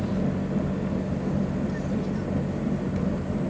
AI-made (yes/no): no